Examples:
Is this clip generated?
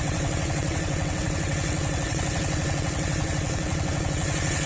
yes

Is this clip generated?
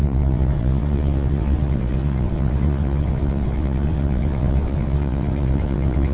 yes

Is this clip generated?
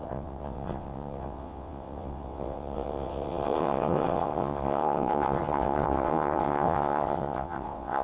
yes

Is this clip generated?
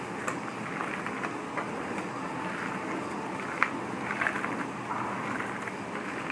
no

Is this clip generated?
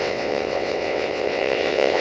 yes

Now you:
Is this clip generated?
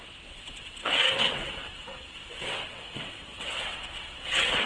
yes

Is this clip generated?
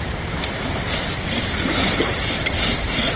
no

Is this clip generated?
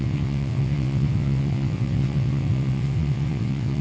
yes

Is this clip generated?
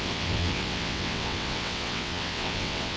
yes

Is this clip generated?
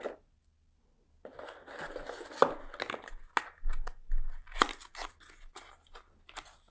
no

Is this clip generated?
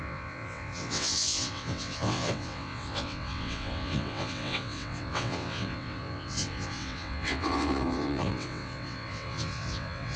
yes